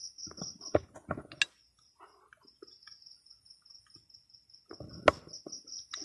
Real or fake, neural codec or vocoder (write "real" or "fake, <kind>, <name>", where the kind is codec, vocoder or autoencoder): real